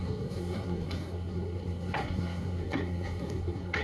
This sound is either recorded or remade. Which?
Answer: remade